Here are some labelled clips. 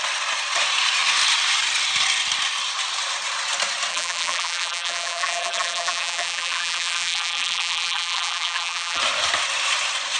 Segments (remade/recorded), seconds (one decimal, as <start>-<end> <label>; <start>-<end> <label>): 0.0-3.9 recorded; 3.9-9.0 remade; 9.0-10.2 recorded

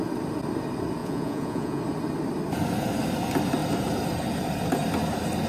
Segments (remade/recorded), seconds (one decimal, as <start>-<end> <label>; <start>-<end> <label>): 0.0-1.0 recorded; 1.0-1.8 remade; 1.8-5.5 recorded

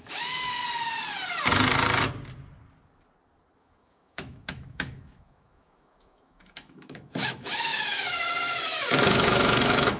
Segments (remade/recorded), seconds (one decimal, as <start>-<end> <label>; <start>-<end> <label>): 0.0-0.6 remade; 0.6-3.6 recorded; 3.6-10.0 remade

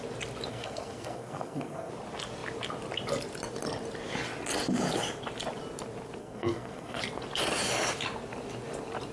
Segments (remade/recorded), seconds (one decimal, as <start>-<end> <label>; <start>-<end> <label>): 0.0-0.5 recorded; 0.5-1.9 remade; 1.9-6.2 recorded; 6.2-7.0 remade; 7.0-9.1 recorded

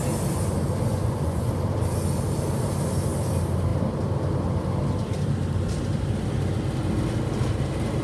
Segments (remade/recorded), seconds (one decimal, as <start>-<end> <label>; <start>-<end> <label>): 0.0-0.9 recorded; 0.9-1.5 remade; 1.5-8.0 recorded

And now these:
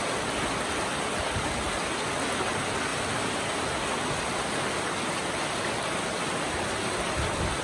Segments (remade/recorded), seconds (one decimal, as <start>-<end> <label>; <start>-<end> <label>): 0.0-7.6 recorded

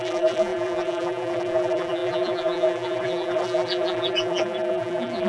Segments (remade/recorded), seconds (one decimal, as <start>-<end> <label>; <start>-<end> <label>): 0.0-5.3 remade

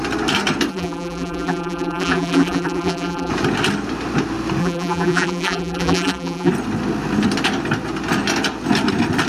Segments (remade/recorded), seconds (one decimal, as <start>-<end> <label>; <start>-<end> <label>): 0.0-0.7 recorded; 0.7-3.3 remade; 3.3-4.6 recorded; 4.6-6.5 remade; 6.5-9.3 recorded